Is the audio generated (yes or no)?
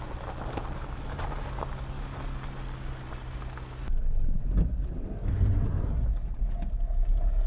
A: no